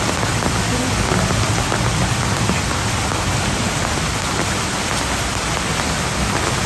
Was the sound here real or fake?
real